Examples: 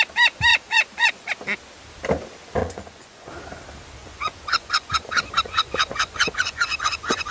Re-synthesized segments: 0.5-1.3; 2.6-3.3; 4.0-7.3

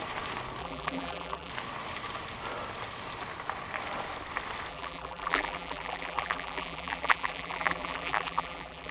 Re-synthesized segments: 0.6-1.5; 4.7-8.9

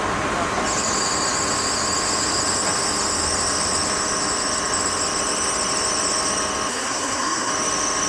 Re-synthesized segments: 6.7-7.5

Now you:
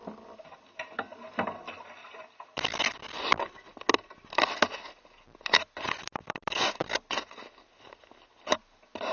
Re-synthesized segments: none